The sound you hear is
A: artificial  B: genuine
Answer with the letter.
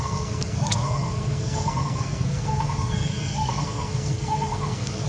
A